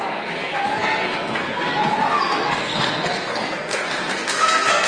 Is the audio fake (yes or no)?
yes